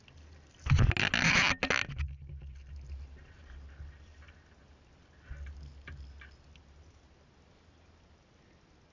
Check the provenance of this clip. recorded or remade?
recorded